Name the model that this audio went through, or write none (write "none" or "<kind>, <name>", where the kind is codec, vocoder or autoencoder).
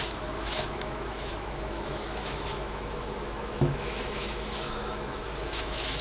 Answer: autoencoder, DAC-VAE